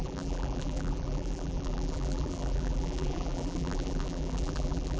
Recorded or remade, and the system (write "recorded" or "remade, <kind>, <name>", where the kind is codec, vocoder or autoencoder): remade, vocoder, BigVGAN v2